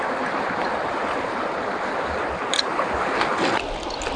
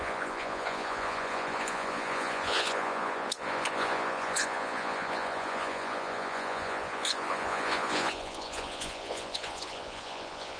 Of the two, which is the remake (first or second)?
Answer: second